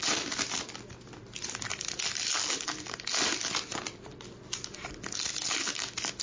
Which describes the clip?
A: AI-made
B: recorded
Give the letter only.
B